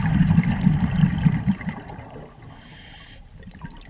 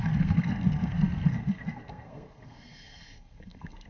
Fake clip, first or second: second